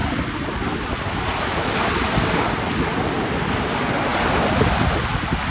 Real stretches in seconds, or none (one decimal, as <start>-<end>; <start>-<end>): 0.0-5.5